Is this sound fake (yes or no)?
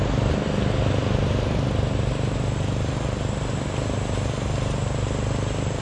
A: no